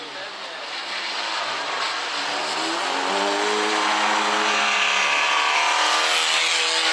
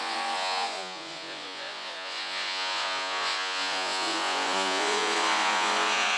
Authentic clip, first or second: first